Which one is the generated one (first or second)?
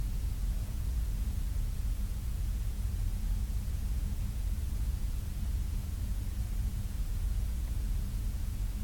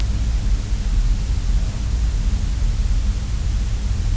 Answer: first